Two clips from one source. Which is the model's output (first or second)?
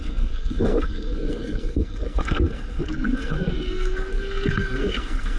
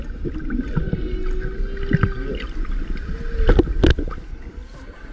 first